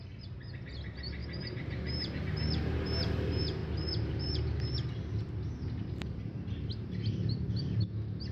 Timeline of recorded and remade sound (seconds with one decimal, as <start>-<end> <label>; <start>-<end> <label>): 0.0-1.2 recorded; 1.2-2.2 remade; 2.2-8.3 recorded